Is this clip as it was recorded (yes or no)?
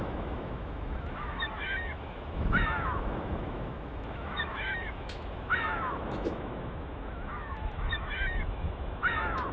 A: no